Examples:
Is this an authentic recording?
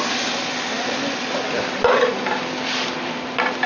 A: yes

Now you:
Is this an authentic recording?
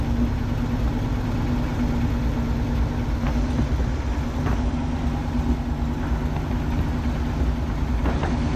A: yes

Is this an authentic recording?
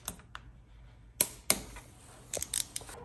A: yes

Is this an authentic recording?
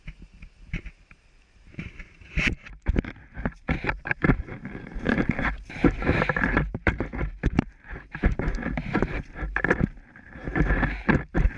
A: no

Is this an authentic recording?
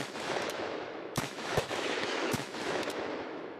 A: no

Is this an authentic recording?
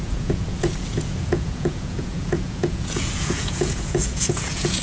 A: no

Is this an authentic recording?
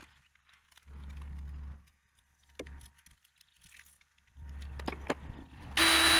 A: yes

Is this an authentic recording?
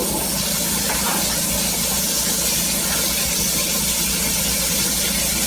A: yes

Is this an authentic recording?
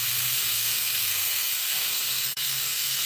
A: no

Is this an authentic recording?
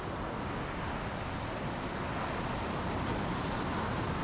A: yes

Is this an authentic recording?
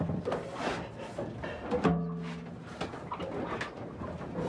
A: yes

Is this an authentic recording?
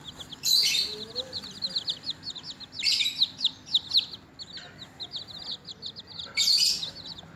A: yes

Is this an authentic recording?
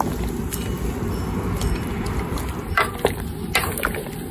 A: yes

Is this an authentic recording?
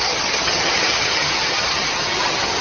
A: no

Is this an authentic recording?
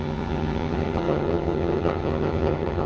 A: no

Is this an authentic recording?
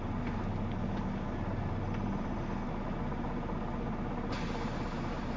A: yes